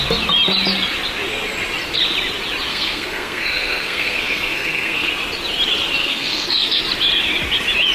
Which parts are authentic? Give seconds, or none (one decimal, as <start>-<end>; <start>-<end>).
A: 0.0-2.7; 5.1-6.0; 6.8-7.9